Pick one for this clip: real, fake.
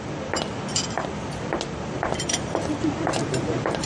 real